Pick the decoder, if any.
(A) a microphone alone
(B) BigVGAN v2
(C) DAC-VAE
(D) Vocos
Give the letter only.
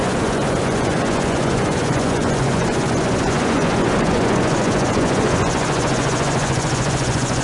D